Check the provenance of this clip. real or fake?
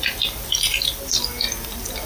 real